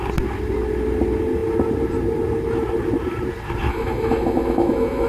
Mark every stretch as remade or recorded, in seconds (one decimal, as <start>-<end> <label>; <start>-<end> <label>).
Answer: 0.0-3.7 recorded; 3.7-5.1 remade